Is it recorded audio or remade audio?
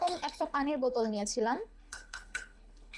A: remade